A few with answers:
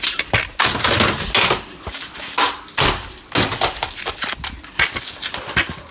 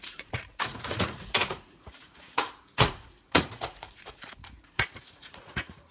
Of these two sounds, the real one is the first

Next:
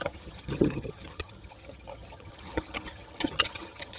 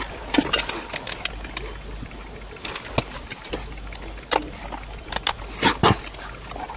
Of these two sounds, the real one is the second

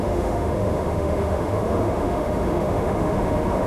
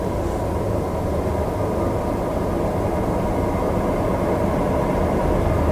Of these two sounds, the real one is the second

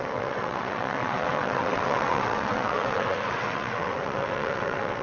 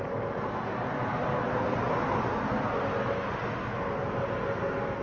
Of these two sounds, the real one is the second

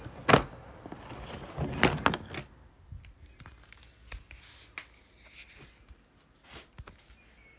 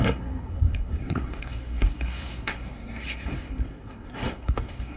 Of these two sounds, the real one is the first